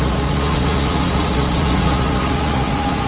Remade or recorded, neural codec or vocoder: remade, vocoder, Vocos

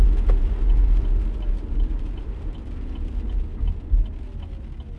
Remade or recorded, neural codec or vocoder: recorded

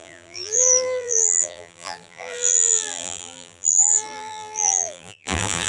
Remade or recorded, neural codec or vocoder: remade, vocoder, BigVGAN v2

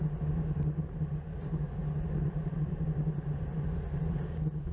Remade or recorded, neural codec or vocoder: recorded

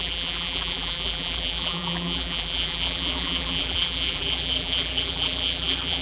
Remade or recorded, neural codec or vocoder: remade, vocoder, BigVGAN v2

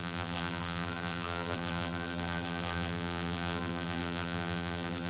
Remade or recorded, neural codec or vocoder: remade, vocoder, BigVGAN v2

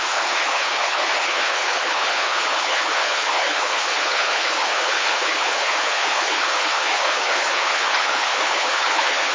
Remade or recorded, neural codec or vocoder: remade, codec, HILCodec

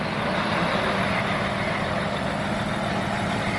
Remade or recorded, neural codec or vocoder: recorded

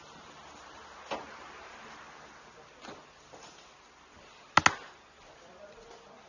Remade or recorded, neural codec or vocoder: recorded